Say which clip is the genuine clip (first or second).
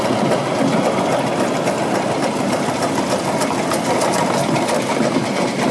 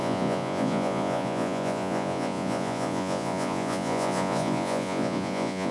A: first